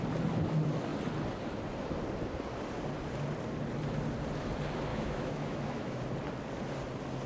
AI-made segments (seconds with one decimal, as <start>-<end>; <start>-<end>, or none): 4.9-6.0